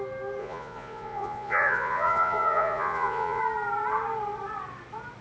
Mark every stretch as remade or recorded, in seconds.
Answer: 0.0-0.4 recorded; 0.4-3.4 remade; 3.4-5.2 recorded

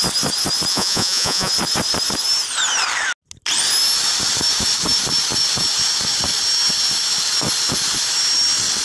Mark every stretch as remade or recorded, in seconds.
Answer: 0.0-0.7 recorded; 0.7-1.5 remade; 1.5-8.8 recorded

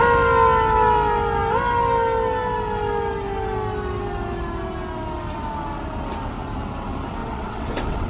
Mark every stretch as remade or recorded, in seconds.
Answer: 0.0-7.2 recorded; 7.2-8.1 remade

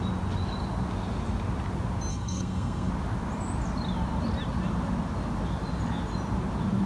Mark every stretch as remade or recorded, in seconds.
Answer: 0.0-2.1 recorded; 2.1-2.9 remade; 2.9-6.9 recorded

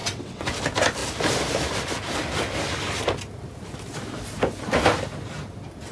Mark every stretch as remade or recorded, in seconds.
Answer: 0.0-0.6 remade; 0.6-5.9 recorded